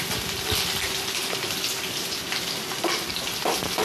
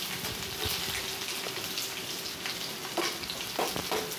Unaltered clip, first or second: second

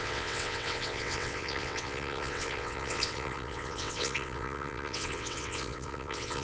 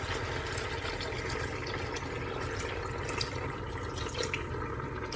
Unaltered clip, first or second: second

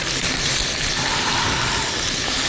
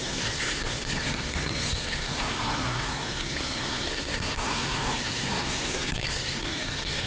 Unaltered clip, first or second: first